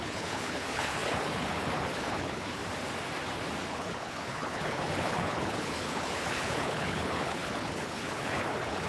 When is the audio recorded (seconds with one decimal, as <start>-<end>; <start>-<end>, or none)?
2.6-3.7